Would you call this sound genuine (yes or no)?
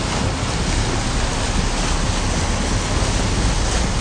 yes